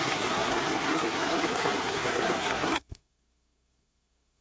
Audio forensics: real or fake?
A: fake